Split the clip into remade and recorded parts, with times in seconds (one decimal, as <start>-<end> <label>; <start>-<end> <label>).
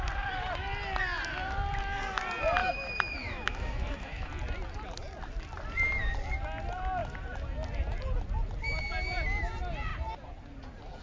0.0-2.6 recorded; 2.6-4.3 remade; 4.3-11.0 recorded